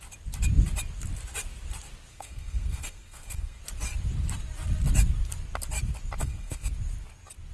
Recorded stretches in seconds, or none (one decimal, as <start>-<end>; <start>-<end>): 0.0-2.1; 3.6-6.2; 6.7-7.5